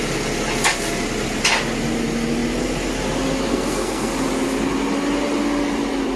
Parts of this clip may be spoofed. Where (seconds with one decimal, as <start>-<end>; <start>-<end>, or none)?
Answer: 3.5-4.1